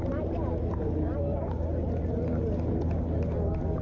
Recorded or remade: recorded